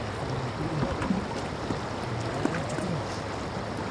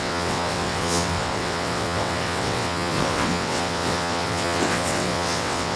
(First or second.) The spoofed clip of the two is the second